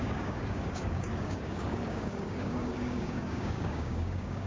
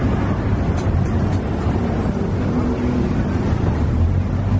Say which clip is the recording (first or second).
second